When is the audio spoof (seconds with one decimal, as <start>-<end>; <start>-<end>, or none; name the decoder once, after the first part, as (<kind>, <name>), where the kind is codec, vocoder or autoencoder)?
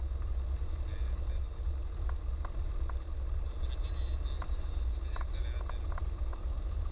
none